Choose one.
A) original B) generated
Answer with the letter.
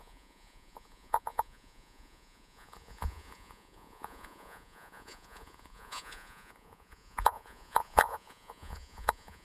B